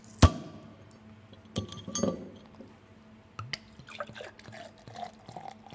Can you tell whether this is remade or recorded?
recorded